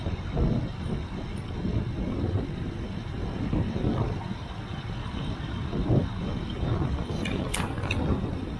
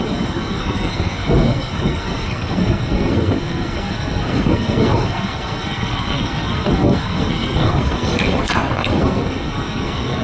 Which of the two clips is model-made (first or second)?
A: second